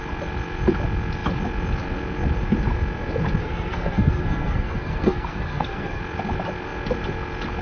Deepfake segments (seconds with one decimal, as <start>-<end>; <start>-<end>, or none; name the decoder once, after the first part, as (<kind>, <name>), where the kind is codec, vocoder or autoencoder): 3.4-6.0 (codec, SNAC)

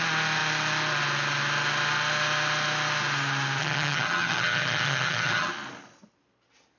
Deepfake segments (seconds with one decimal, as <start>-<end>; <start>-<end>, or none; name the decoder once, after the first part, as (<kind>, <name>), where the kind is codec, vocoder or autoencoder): 3.6-5.5 (vocoder, HiFi-GAN)

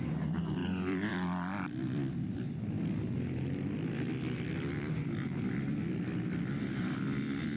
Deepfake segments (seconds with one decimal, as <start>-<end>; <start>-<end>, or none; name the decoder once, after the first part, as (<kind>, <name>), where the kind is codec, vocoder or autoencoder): 0.6-2.4 (vocoder, BigVGAN v2)

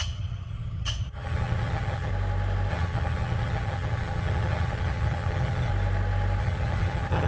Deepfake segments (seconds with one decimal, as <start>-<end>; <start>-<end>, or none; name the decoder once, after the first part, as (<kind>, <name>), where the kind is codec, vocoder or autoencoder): 0.0-2.1 (vocoder, HiFi-GAN); 2.7-5.7; 6.4-7.3

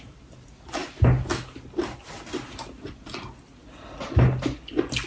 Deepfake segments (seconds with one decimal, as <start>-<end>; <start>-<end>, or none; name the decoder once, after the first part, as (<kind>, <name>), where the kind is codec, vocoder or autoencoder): none